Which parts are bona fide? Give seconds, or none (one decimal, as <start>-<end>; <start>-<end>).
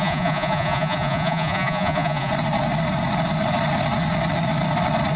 2.3-5.2